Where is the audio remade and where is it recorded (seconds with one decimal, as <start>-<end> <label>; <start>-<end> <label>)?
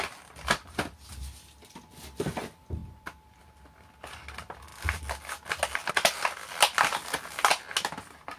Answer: 0.0-8.4 recorded